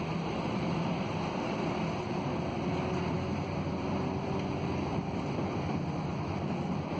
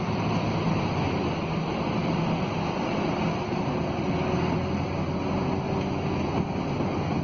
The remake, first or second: first